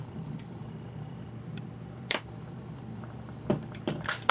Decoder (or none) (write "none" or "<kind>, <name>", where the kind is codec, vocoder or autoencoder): vocoder, BigVGAN v2